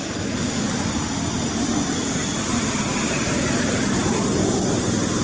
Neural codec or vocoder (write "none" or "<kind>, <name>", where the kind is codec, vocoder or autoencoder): none